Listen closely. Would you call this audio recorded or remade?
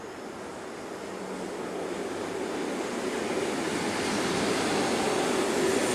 recorded